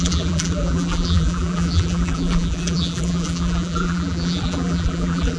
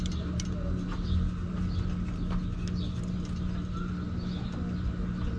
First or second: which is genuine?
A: second